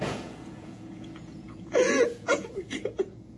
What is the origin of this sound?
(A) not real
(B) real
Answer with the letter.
A